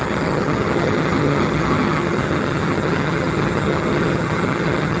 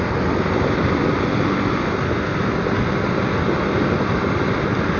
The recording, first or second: second